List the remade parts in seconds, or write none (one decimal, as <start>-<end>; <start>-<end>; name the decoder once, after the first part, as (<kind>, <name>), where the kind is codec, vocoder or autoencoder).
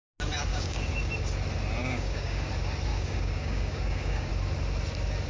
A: 0.5-1.1 (codec, DAC); 1.8-2.5; 2.9-4.3